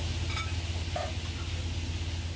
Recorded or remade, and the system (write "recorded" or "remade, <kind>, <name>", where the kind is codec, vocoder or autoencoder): recorded